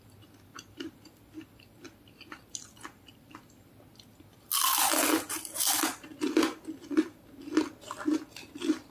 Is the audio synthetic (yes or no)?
no